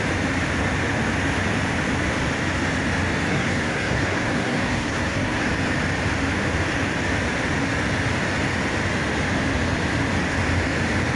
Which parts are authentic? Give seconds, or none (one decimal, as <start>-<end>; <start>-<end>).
0.0-3.3; 5.5-11.2